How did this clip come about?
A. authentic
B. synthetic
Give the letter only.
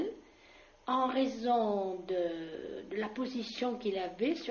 A